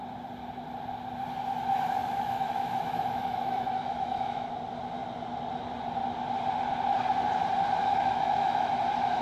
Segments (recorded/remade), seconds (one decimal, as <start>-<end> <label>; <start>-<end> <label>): 0.0-2.0 recorded; 2.0-4.5 remade; 4.5-7.8 recorded; 7.8-8.7 remade; 8.7-9.2 recorded